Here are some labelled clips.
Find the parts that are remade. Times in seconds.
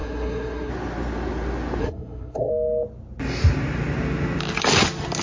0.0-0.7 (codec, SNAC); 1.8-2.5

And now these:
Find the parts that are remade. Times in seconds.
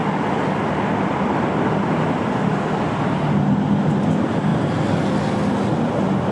none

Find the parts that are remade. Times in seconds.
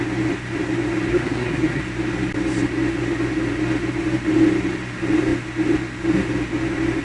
1.1-1.8 (codec, SNAC)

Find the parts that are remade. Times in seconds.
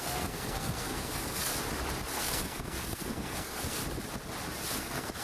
0.0-1.5 (codec, SNAC); 2.2-3.8; 4.8-5.2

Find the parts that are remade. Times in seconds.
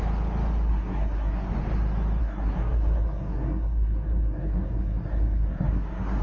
0.7-1.5 (codec, SNAC); 2.2-6.2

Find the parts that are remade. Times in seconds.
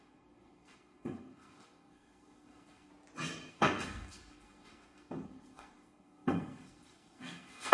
0.0-2.9 (codec, SNAC); 3.5-7.7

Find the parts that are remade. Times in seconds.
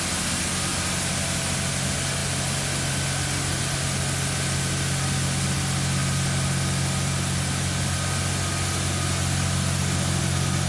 none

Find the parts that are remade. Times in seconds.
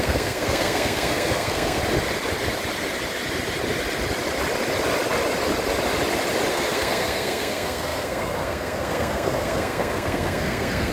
0.0-1.8 (codec, SNAC); 6.5-10.9